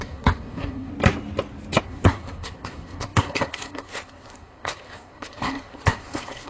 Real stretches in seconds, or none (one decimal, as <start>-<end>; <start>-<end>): 0.9-1.8